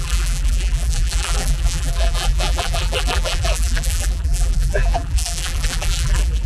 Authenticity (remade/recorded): remade